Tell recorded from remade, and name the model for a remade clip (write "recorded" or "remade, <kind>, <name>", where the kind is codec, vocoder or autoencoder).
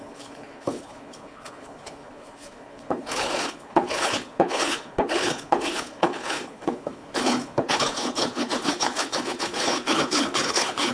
remade, codec, HILCodec